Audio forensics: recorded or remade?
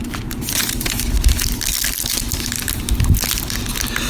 recorded